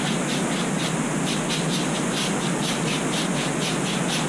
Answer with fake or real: real